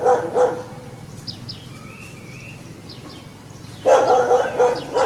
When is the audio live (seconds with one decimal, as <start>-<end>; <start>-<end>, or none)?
0.0-5.1